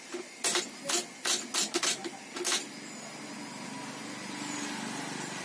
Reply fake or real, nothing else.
real